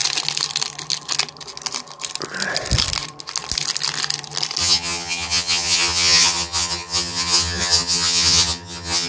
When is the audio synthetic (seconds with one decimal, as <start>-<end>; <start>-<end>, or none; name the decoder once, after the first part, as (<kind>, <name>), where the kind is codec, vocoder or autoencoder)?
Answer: 4.6-9.1 (vocoder, HiFi-GAN)